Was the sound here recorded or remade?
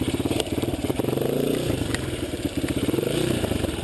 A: remade